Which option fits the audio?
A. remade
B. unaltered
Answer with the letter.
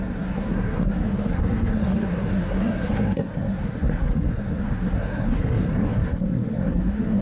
A